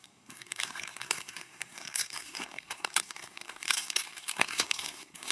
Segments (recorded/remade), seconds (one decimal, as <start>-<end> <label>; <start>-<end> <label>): 0.0-5.3 remade